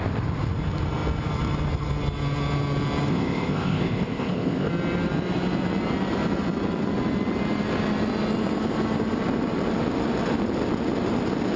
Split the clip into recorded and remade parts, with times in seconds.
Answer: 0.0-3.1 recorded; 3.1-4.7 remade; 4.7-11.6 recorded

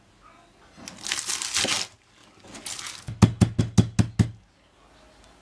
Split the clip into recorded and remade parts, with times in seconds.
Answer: 0.0-5.4 recorded

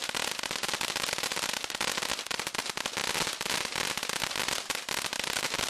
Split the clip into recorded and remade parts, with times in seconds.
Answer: 0.0-5.7 recorded

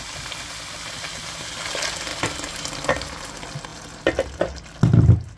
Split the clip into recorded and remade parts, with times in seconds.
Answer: 0.0-5.4 recorded

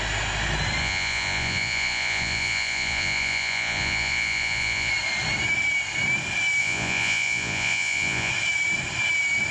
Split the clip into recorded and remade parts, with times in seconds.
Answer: 0.0-0.8 recorded; 0.8-4.9 remade; 4.9-6.6 recorded; 6.6-8.3 remade; 8.3-9.5 recorded

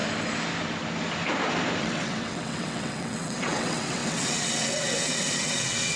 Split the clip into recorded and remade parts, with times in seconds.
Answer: 0.0-1.8 recorded; 1.8-6.0 remade

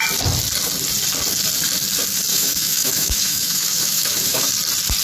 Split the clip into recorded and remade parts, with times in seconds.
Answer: 0.0-2.3 recorded; 2.3-4.5 remade; 4.5-5.0 recorded